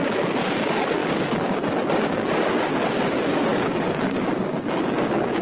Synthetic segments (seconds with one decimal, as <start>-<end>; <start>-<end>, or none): 1.0-2.3; 3.5-5.4